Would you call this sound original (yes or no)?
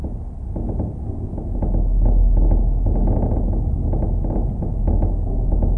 yes